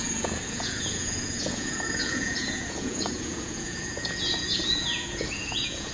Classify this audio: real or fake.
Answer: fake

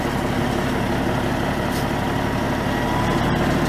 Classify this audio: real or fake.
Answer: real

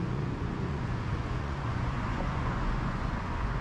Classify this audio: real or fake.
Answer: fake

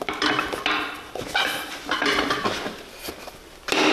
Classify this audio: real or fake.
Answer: real